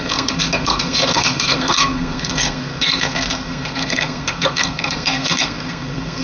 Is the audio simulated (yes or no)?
yes